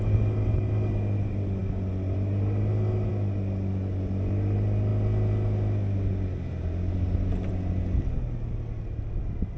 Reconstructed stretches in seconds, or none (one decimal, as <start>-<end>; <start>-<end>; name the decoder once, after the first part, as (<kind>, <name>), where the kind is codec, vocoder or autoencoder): none

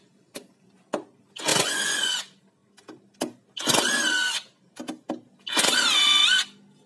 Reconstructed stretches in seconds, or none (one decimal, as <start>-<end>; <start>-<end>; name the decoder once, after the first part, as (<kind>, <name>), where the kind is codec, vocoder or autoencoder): 1.5-2.2 (vocoder, Vocos)

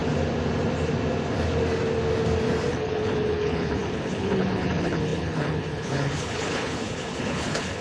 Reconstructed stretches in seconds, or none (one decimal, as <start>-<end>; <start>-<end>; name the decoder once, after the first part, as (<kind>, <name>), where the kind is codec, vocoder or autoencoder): 2.7-7.8 (codec, HILCodec)

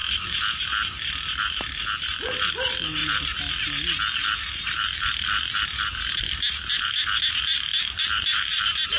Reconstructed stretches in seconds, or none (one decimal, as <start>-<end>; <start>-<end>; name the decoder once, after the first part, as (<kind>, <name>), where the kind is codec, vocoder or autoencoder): none

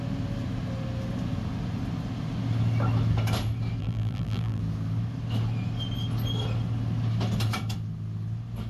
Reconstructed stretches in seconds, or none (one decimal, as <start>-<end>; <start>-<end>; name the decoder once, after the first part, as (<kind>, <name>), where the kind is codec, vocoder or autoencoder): 3.8-4.6 (vocoder, BigVGAN v2)